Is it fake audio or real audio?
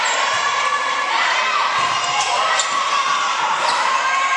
fake